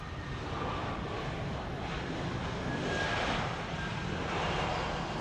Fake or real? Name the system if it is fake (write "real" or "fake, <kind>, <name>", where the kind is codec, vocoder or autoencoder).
real